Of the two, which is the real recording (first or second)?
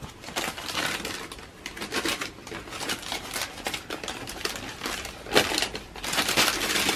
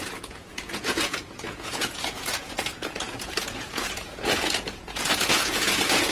first